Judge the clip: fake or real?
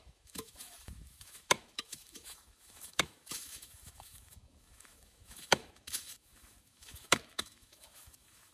fake